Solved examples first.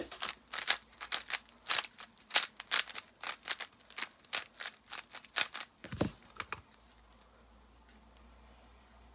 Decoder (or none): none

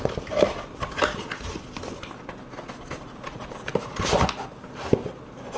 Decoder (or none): none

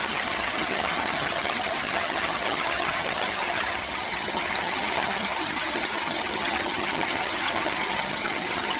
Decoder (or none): vocoder, HiFi-GAN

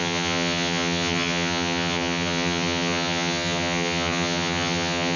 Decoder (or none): vocoder, HiFi-GAN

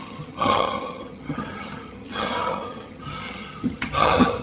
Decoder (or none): vocoder, HiFi-GAN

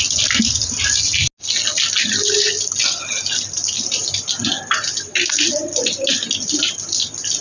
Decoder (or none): none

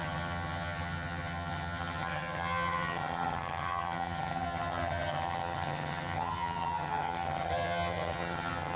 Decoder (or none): vocoder, HiFi-GAN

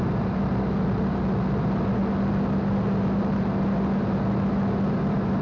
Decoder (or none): none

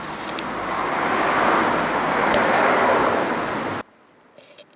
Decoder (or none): none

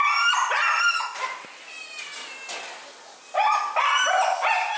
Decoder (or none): none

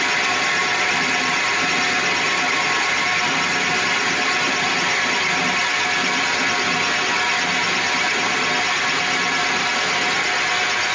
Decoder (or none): none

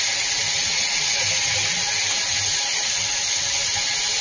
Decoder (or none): none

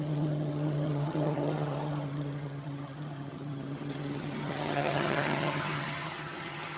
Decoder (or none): vocoder, HiFi-GAN